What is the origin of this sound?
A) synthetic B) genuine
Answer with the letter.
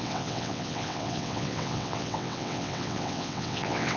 A